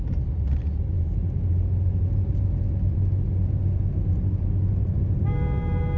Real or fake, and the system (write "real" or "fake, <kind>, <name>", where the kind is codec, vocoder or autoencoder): real